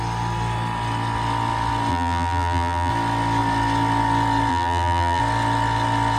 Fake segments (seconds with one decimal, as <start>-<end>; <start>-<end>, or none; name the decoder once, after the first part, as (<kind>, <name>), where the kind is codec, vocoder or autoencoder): 1.9-2.9 (vocoder, BigVGAN v2); 4.5-5.2